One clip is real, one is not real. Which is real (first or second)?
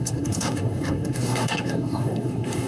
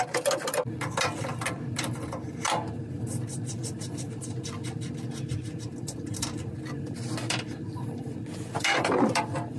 second